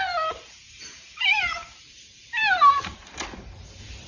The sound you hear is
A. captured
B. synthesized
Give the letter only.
B